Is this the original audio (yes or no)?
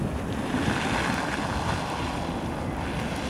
yes